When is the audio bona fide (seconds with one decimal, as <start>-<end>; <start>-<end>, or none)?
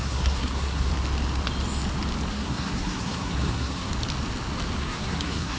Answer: 0.9-2.3; 3.9-4.8